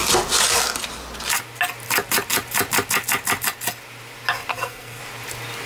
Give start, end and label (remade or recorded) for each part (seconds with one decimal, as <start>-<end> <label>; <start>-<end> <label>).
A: 0.0-4.5 recorded; 4.5-5.0 remade; 5.0-5.7 recorded